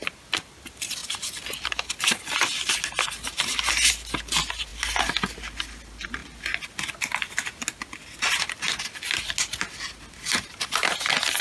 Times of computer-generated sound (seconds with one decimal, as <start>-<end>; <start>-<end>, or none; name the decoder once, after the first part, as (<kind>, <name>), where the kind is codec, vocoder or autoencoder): none